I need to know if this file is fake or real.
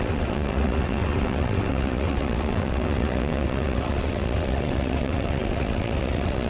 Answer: fake